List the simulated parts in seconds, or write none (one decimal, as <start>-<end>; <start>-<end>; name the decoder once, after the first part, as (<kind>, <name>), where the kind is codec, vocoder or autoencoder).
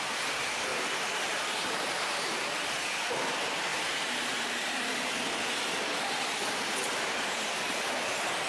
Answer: 0.7-2.2 (vocoder, BigVGAN v2); 3.7-5.1